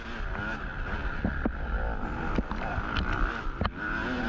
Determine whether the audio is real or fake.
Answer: real